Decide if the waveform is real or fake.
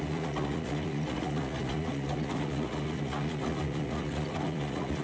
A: fake